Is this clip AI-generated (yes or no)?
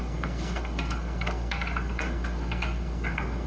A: yes